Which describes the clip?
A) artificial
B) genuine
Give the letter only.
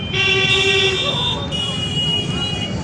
B